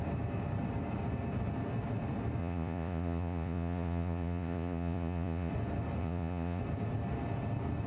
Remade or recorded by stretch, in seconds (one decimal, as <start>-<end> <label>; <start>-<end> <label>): 0.0-2.4 recorded; 2.4-5.5 remade; 5.5-6.0 recorded; 6.0-6.6 remade; 6.6-7.9 recorded